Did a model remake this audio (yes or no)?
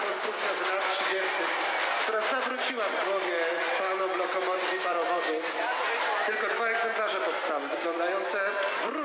no